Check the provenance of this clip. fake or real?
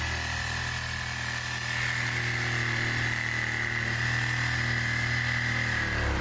real